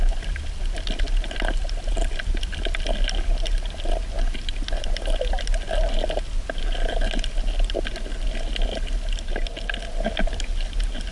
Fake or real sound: real